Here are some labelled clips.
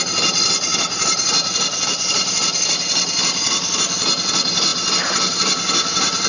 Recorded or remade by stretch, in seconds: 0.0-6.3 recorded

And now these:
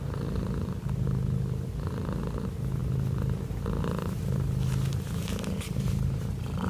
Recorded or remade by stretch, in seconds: 0.0-6.7 recorded

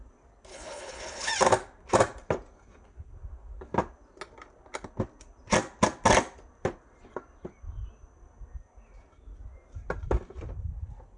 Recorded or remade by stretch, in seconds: 0.0-0.5 recorded; 0.5-1.3 remade; 1.3-11.2 recorded